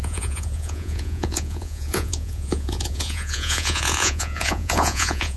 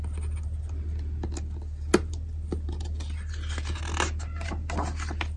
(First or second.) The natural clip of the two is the second